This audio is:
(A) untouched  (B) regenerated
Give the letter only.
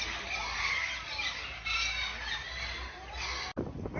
A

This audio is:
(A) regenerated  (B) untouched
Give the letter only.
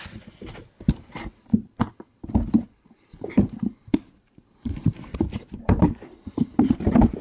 A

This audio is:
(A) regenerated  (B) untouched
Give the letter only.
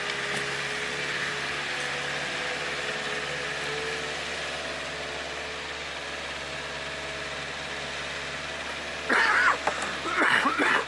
B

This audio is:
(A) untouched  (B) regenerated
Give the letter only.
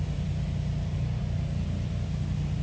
A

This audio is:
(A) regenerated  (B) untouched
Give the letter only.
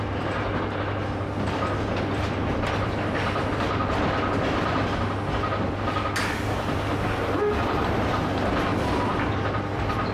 B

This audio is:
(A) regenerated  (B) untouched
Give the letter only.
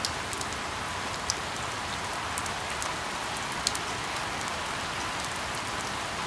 B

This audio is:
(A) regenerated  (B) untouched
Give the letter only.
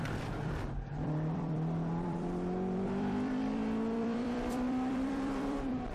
A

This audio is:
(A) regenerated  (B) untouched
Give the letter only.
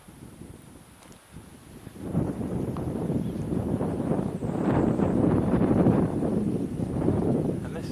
A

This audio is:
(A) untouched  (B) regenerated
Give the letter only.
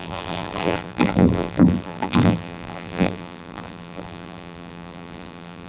B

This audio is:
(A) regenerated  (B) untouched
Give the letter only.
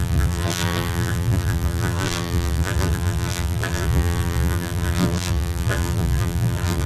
A